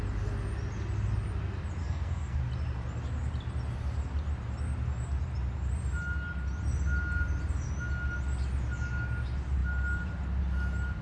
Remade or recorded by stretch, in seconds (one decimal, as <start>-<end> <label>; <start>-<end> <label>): 0.0-1.8 recorded; 1.8-2.4 remade; 2.4-11.0 recorded